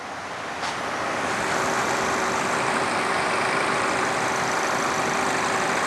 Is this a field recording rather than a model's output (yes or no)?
no